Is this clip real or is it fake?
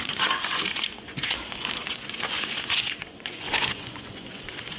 fake